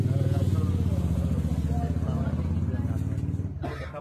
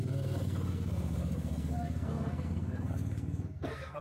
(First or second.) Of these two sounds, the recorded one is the first